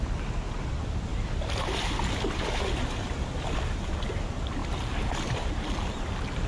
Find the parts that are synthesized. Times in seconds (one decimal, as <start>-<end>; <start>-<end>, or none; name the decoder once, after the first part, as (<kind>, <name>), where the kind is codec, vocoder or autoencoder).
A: 1.1-3.3 (vocoder, BigVGAN v2)